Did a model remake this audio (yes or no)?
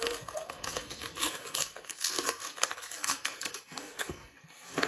yes